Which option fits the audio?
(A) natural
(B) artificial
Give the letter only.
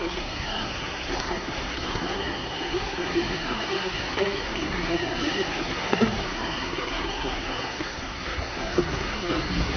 B